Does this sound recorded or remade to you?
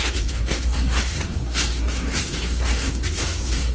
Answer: remade